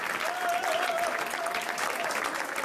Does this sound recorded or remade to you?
recorded